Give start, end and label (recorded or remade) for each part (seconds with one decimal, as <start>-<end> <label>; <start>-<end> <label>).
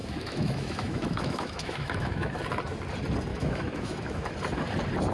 0.0-2.3 remade; 2.3-3.3 recorded; 3.3-4.3 remade; 4.3-5.1 recorded